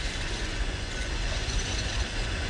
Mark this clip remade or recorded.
remade